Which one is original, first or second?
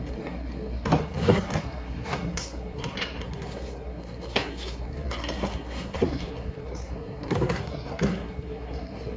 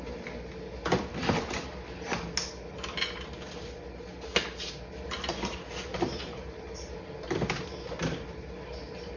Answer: second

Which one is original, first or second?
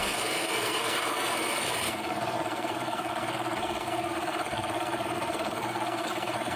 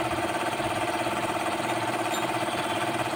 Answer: second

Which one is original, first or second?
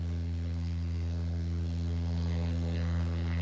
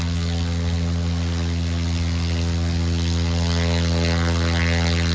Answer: second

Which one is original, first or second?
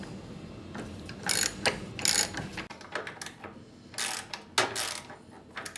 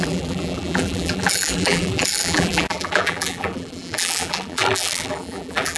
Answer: first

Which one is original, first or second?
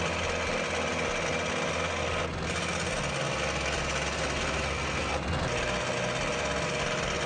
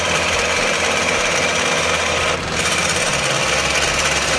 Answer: first